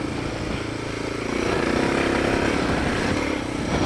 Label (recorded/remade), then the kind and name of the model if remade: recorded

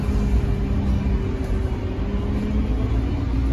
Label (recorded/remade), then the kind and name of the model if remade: recorded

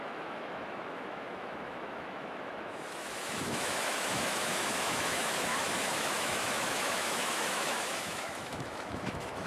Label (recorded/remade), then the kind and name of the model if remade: remade, autoencoder, DAC-VAE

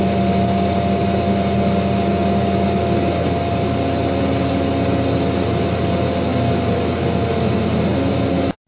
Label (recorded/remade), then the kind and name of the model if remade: recorded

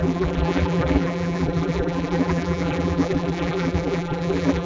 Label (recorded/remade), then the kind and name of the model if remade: remade, vocoder, BigVGAN v2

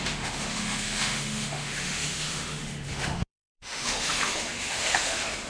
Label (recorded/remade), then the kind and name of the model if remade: remade, autoencoder, DAC-VAE